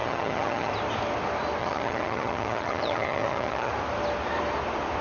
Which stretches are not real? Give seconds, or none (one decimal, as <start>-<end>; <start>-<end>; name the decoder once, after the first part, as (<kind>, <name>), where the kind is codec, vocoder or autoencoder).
0.0-0.7 (vocoder, HiFi-GAN); 1.6-3.7